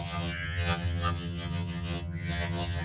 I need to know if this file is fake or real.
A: fake